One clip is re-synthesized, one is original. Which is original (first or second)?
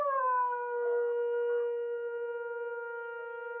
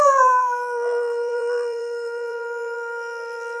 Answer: first